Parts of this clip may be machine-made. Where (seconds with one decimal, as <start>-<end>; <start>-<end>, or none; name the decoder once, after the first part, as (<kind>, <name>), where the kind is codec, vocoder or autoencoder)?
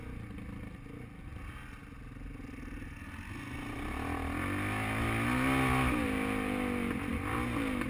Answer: none